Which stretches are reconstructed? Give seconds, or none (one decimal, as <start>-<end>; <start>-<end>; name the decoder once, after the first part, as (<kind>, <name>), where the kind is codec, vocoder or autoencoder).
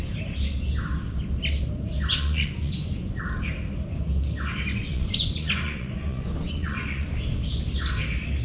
2.1-3.2 (vocoder, Vocos); 4.9-7.1